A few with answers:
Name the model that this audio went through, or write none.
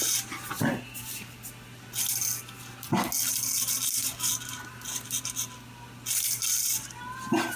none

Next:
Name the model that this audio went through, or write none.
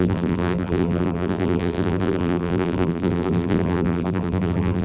vocoder, BigVGAN v2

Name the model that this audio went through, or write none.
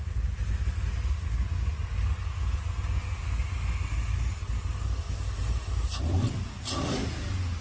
none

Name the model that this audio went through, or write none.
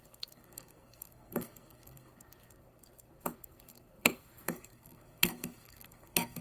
codec, SNAC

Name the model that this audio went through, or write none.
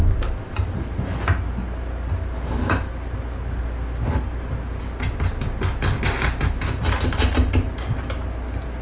none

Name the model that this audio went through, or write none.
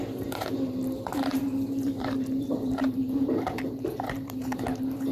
vocoder, BigVGAN v2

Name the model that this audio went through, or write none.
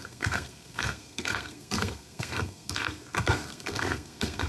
codec, SNAC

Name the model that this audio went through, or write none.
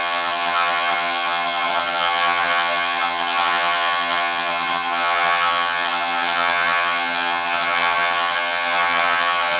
vocoder, HiFi-GAN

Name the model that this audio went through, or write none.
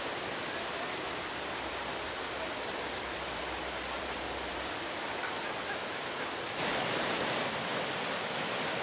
vocoder, BigVGAN v2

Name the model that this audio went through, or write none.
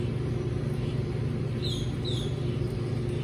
none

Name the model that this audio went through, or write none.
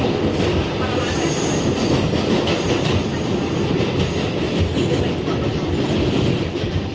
none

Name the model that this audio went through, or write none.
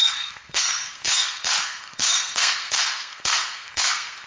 codec, SNAC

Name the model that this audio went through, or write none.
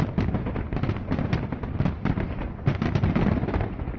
none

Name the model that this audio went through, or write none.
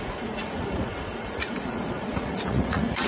vocoder, Vocos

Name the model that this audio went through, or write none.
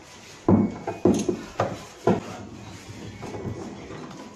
none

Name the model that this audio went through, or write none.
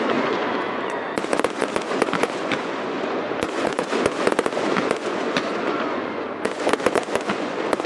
vocoder, Vocos